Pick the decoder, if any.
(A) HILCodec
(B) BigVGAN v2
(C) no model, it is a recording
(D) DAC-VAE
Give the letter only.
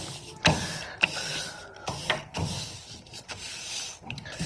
C